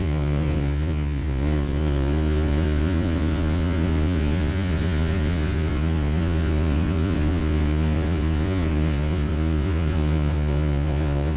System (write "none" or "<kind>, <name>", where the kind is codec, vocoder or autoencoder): vocoder, Vocos